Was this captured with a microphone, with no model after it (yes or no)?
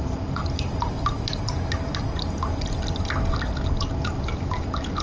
yes